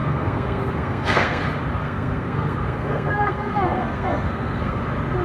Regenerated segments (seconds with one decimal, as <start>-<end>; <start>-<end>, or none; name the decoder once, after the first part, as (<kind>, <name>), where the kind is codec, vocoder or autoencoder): 0.0-1.4 (codec, SNAC); 1.8-4.8